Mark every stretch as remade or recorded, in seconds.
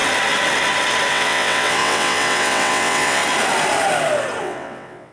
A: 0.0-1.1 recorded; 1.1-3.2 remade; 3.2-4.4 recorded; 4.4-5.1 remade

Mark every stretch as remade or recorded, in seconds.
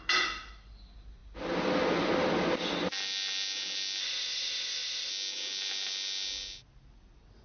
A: 0.0-4.0 recorded; 4.0-5.1 remade; 5.1-7.4 recorded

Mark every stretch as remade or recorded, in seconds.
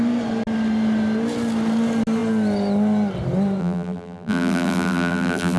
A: 0.0-3.6 recorded; 3.6-5.6 remade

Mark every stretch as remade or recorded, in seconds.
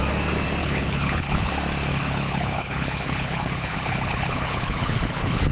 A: 0.0-0.6 recorded; 0.6-1.5 remade; 1.5-1.9 recorded; 1.9-5.5 remade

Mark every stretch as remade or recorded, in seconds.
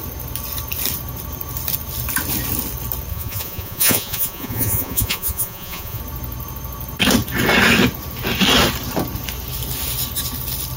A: 0.0-3.1 recorded; 3.1-6.0 remade; 6.0-10.8 recorded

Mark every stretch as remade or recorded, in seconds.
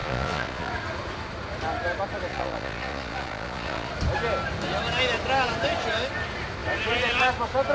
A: 0.0-0.7 remade; 0.7-2.3 recorded; 2.3-3.9 remade; 3.9-7.7 recorded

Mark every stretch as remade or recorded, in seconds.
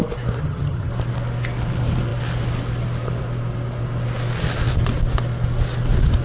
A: 0.0-0.4 recorded; 0.4-0.9 remade; 0.9-6.2 recorded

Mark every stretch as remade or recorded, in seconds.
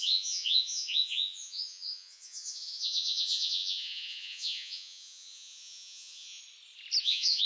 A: 0.0-6.4 remade; 6.4-7.0 recorded; 7.0-7.5 remade